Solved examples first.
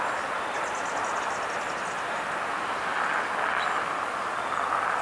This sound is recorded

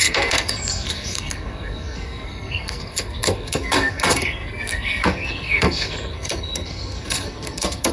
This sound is remade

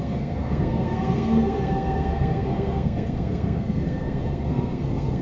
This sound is remade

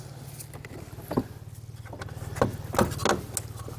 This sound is recorded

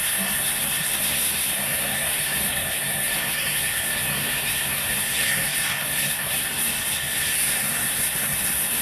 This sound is remade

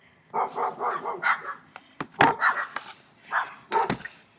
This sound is recorded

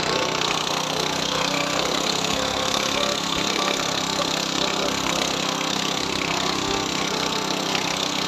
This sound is remade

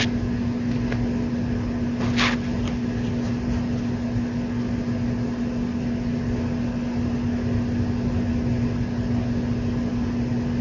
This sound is recorded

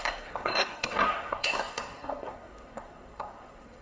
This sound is remade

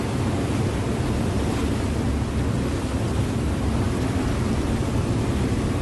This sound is recorded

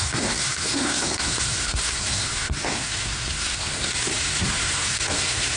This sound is remade